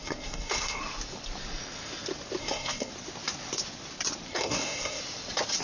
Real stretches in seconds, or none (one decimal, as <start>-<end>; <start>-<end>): 0.8-2.4; 2.9-4.3; 5.0-5.6